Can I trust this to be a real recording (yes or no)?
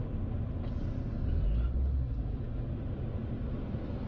yes